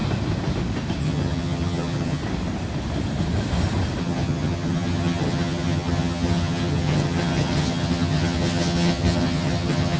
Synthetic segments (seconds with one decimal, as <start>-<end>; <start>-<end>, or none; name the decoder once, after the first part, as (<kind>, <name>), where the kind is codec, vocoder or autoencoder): 1.0-2.2 (vocoder, HiFi-GAN); 4.0-10.0